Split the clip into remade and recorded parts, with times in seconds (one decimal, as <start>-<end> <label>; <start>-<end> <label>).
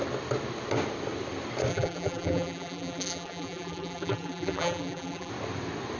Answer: 0.0-1.7 recorded; 1.7-5.3 remade; 5.3-6.0 recorded